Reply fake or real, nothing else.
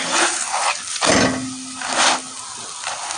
real